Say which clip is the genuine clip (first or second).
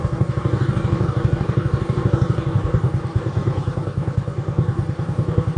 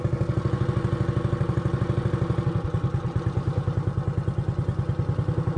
second